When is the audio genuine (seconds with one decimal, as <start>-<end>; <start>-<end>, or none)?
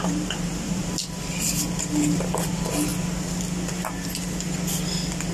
1.0-2.5; 2.9-5.3